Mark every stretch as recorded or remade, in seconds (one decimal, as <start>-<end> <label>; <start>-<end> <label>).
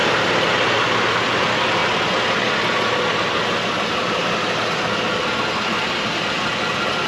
0.0-7.1 recorded